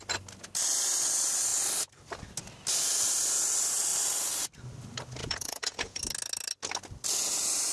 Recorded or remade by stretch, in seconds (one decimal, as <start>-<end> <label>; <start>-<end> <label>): 0.0-5.2 recorded; 5.2-6.0 remade; 6.0-7.7 recorded